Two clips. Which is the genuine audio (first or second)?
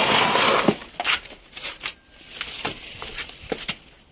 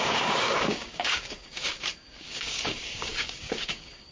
first